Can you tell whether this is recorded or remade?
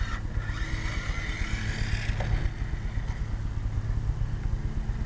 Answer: recorded